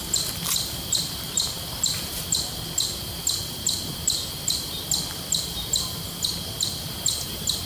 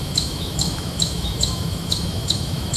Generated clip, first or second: second